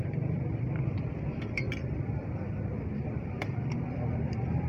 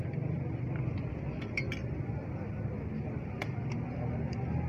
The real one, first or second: second